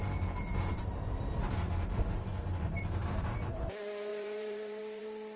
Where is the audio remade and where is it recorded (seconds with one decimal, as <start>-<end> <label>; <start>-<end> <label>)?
0.0-5.4 remade